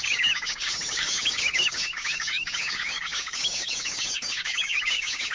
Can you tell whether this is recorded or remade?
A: remade